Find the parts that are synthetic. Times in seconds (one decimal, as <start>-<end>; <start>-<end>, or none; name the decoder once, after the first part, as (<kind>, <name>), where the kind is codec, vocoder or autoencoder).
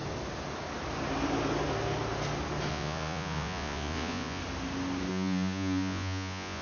2.7-4.4 (vocoder, Vocos); 5.1-6.6